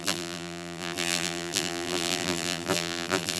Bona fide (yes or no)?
no